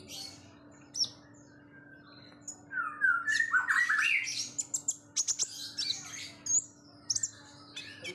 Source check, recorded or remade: recorded